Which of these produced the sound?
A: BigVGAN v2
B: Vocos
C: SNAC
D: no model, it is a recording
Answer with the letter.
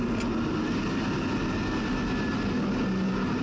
D